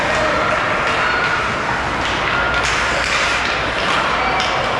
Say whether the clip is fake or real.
real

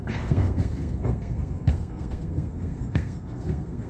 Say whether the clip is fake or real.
fake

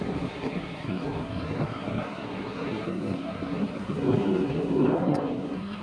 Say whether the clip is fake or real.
fake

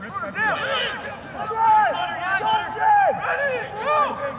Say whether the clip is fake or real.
real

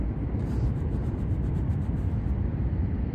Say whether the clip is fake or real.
real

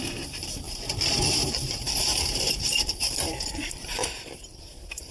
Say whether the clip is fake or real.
fake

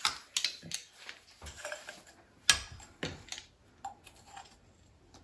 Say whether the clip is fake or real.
real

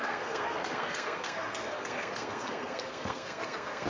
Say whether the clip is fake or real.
fake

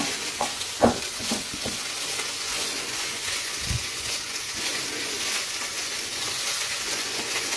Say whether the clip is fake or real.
fake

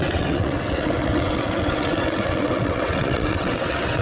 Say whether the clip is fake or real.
fake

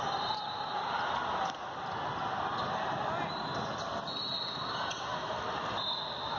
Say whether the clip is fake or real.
real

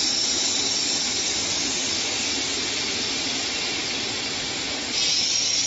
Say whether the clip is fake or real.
real